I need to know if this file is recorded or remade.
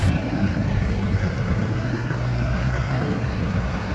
remade